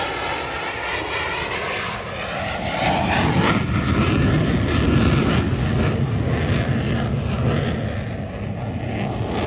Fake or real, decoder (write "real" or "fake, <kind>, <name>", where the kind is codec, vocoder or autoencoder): real